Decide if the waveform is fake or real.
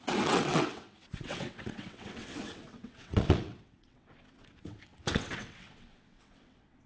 fake